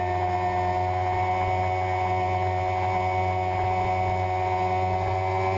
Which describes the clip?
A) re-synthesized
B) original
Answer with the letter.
B